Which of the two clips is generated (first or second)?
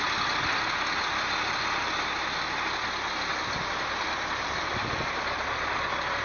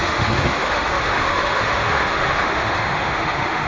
second